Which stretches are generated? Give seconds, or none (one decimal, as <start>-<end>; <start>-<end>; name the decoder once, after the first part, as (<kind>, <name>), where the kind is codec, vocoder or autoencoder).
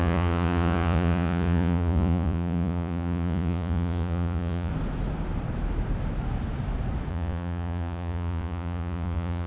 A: 0.0-4.7 (vocoder, Vocos); 7.1-9.5